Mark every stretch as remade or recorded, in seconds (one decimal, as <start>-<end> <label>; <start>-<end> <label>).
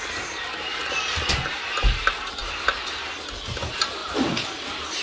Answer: 0.0-0.7 recorded; 0.7-1.3 remade; 1.3-2.4 recorded; 2.4-3.3 remade; 3.3-4.0 recorded; 4.0-4.5 remade; 4.5-5.0 recorded